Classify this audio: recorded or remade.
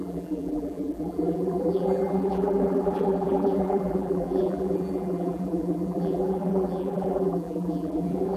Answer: remade